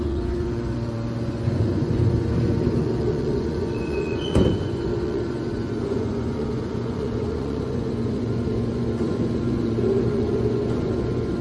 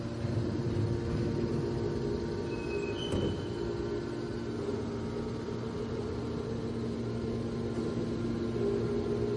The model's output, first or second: first